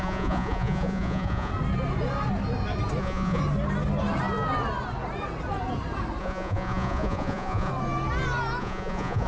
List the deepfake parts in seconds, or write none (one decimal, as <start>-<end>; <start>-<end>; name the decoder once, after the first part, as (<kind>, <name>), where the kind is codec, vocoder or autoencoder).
0.0-1.5 (vocoder, Vocos); 3.0-3.4; 6.2-7.7; 8.6-9.3